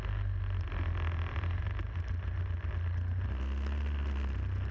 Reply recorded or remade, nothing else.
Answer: recorded